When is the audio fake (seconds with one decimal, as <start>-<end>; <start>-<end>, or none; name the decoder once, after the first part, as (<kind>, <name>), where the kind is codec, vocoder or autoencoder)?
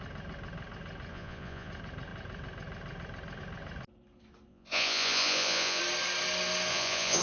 1.1-1.7 (vocoder, Vocos); 4.5-5.8; 6.7-7.2